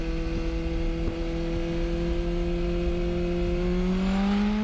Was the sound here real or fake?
real